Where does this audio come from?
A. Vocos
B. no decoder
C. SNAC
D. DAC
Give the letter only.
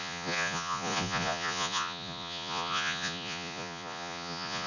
A